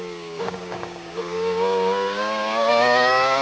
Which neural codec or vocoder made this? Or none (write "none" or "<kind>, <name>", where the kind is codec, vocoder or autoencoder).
codec, DAC